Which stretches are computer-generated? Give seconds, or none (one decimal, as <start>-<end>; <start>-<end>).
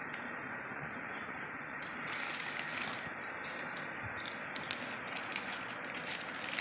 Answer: 0.4-1.8; 5.3-6.1